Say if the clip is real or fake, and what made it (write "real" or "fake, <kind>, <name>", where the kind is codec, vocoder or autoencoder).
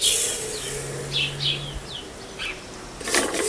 real